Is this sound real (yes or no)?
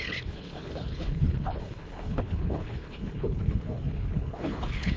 no